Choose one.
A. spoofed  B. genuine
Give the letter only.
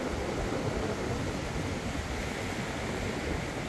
B